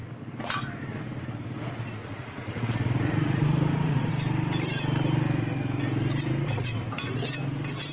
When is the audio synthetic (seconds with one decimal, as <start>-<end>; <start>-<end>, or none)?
2.0-4.1